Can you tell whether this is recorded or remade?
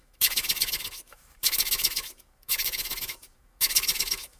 remade